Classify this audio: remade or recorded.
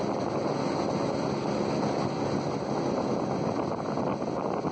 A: recorded